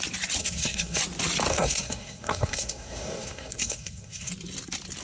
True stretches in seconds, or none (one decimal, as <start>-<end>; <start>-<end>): 0.0-0.4; 1.0-1.5; 4.3-5.0

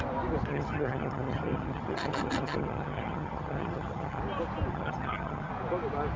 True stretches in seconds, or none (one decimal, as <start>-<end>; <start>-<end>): 0.0-0.5; 4.2-4.7; 5.5-6.2

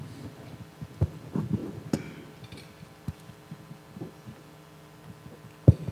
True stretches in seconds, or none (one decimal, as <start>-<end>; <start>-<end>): 0.0-5.9